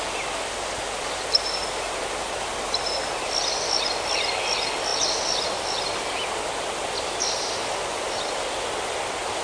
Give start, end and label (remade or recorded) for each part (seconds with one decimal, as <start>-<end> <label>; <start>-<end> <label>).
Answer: 0.0-9.4 recorded